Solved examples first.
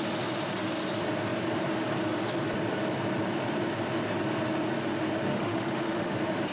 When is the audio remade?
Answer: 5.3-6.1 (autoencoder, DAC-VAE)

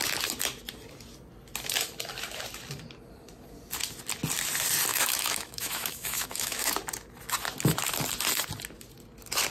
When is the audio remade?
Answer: 4.9-6.7 (autoencoder, DAC-VAE)

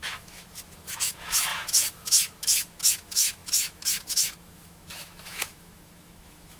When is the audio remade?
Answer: 0.0-6.6 (autoencoder, DAC-VAE)

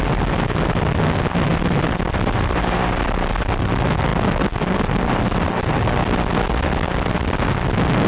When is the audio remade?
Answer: none

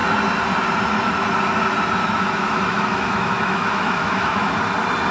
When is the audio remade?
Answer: 2.0-4.5 (autoencoder, DAC-VAE)

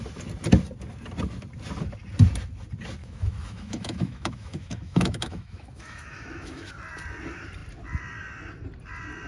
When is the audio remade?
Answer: 3.0-6.7 (autoencoder, DAC-VAE)

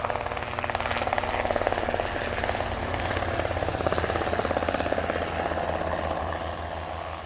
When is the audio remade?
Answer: none